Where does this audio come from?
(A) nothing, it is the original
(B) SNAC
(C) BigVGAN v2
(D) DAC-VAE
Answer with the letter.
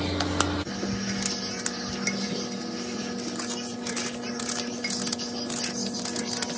A